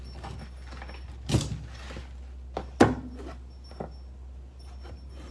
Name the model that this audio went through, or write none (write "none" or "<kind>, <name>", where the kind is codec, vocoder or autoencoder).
none